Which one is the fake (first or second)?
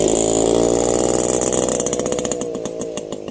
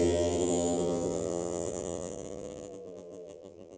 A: second